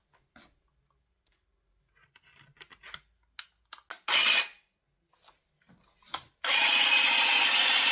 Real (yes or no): yes